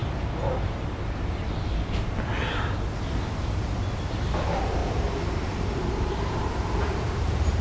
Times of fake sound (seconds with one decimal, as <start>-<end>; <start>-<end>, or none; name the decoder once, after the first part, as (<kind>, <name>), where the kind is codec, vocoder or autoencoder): 4.0-7.6 (vocoder, BigVGAN v2)